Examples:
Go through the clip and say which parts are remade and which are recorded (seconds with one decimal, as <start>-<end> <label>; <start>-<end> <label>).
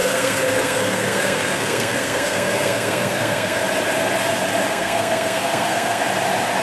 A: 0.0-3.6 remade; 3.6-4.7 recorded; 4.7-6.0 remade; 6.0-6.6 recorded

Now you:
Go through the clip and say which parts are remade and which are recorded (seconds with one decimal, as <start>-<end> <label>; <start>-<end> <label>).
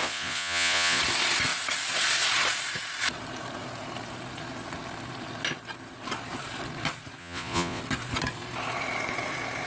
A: 0.0-1.0 remade; 1.0-7.2 recorded; 7.2-7.8 remade; 7.8-9.7 recorded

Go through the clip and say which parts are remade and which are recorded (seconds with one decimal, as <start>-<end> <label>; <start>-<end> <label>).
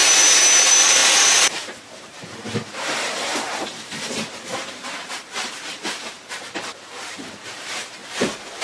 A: 0.0-0.6 recorded; 0.6-8.0 remade; 8.0-8.6 recorded